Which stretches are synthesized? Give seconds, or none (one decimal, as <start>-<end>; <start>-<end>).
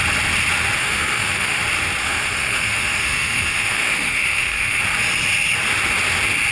0.8-1.6; 2.0-4.8